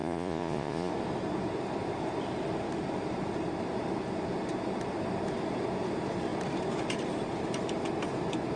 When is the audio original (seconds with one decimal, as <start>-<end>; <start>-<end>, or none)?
0.9-8.6